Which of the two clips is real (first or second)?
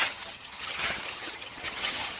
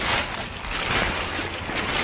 second